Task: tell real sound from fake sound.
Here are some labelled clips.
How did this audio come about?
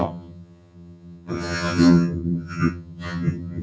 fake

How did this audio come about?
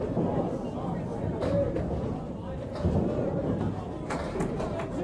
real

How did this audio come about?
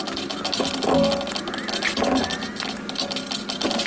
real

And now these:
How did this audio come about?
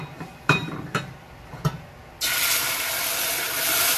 fake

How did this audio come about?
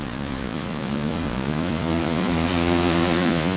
fake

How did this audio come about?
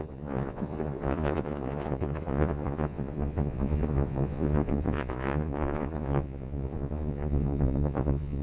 fake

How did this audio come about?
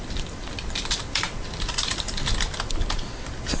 real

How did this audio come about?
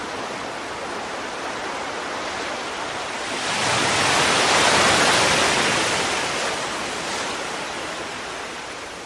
real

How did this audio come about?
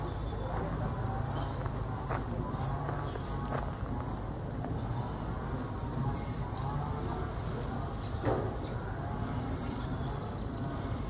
real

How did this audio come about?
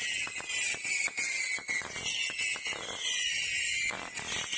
real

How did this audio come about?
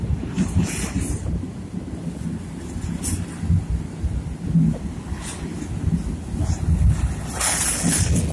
real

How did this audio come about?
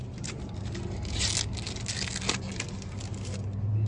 real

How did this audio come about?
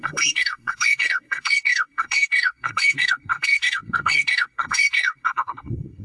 fake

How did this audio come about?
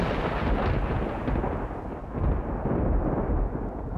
real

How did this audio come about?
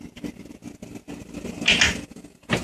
real